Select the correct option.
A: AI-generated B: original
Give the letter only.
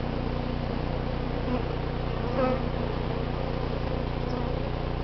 B